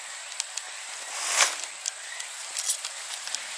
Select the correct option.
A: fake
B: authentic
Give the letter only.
B